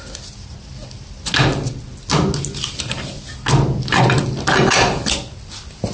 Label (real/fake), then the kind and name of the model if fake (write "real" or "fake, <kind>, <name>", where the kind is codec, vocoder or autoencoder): real